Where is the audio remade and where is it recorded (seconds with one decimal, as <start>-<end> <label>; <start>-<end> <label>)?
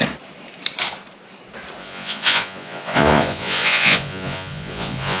0.0-1.8 recorded; 1.8-5.2 remade